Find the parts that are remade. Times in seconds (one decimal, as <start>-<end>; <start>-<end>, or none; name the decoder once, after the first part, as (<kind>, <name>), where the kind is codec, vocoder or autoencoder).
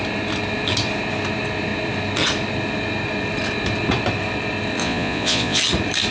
4.8-5.6 (vocoder, Vocos)